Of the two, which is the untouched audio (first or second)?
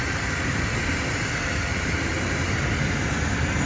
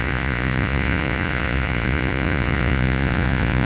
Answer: first